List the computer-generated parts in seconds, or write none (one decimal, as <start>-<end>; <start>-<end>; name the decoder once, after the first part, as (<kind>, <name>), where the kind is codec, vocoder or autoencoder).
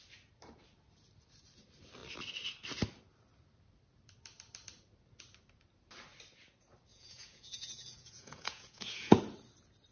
6.9-9.2 (vocoder, Vocos)